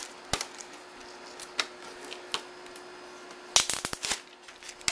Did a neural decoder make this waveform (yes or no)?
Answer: no